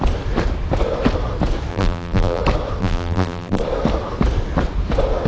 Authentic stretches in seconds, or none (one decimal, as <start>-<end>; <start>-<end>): 0.0-1.7; 2.4-2.8; 3.6-5.3